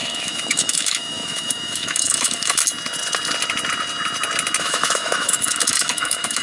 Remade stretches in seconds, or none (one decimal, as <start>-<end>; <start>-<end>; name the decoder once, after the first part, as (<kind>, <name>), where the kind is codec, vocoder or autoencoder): 0.0-2.6 (autoencoder, DAC-VAE); 4.6-6.4